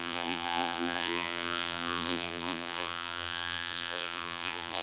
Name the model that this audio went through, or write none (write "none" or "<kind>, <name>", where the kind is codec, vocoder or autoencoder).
vocoder, BigVGAN v2